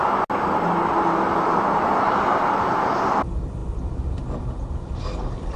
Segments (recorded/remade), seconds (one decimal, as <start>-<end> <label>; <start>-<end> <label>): 0.0-5.6 recorded